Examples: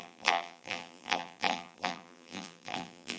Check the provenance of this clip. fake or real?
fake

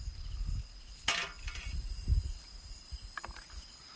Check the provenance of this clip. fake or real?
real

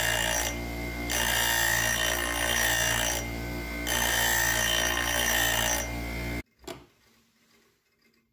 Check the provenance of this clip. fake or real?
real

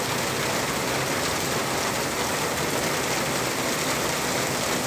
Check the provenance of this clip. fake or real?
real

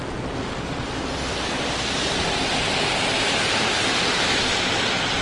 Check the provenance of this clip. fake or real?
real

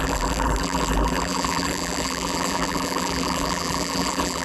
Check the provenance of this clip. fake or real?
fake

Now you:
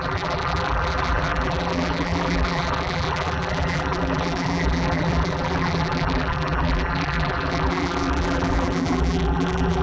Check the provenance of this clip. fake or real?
fake